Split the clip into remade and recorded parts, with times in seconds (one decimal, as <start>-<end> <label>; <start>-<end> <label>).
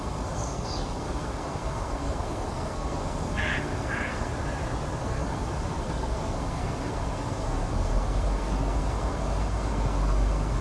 0.0-4.3 remade; 4.3-5.0 recorded; 5.0-10.6 remade